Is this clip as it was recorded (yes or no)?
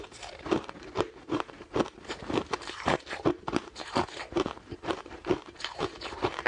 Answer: no